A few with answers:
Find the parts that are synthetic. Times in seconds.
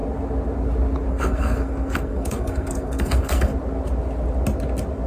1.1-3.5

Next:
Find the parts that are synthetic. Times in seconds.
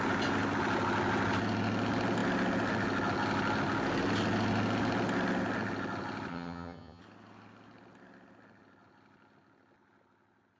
6.3-7.0